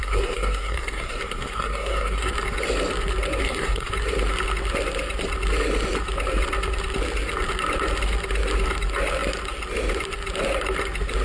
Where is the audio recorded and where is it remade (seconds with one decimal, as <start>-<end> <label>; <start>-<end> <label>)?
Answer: 0.0-2.3 remade; 2.3-3.4 recorded; 3.4-3.9 remade; 3.9-11.2 recorded